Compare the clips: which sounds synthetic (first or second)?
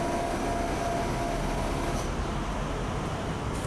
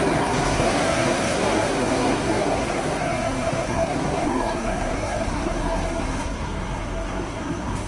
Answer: second